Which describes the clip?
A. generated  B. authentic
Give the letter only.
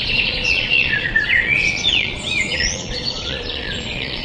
A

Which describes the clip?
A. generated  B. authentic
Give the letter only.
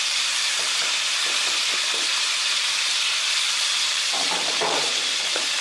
A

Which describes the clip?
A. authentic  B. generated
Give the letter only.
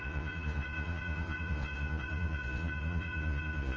B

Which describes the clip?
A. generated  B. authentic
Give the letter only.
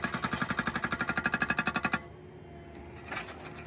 B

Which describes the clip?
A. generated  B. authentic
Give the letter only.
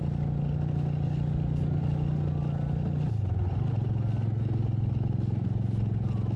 B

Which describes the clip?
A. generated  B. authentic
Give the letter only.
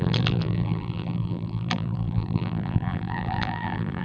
A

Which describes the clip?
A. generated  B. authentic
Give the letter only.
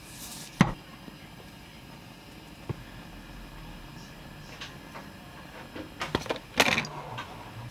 B